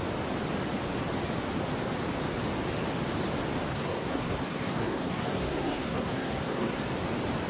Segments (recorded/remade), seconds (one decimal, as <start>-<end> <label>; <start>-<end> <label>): 0.0-3.7 recorded; 3.7-6.8 remade; 6.8-7.5 recorded